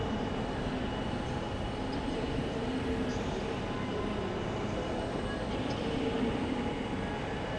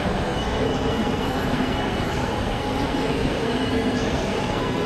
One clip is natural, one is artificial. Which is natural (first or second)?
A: first